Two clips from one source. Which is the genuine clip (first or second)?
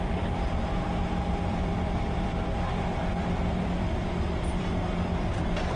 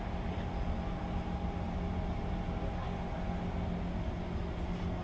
second